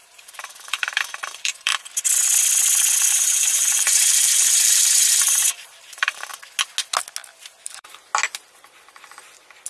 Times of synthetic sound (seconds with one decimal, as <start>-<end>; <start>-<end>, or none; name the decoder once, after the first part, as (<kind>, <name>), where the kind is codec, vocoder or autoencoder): 0.0-1.7 (vocoder, BigVGAN v2); 3.1-6.3; 7.5-8.1